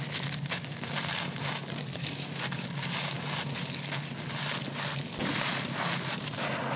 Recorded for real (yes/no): yes